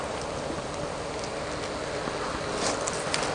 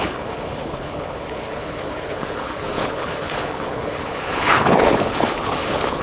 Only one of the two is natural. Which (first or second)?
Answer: first